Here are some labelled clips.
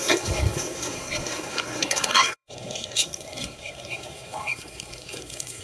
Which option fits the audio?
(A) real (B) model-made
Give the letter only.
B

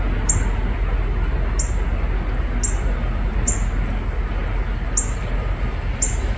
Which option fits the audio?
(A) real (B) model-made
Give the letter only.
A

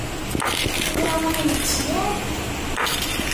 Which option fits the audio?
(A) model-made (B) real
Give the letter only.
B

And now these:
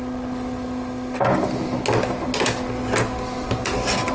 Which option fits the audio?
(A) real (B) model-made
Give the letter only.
A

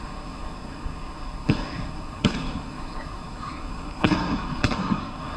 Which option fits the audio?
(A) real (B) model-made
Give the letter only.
B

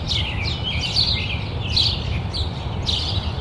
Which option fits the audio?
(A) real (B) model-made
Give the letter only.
A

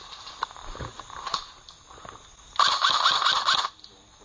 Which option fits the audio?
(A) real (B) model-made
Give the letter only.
A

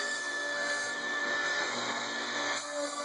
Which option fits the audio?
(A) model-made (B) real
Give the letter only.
A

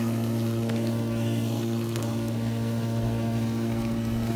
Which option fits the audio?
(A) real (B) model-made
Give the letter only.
B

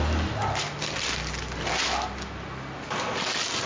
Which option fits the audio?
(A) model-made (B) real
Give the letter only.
B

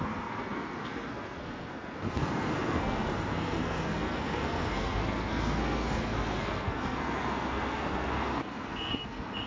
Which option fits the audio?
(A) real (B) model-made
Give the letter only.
B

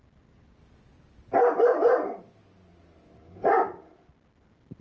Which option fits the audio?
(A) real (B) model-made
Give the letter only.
A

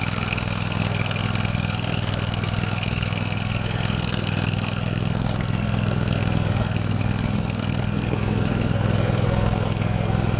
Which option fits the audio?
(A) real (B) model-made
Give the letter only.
B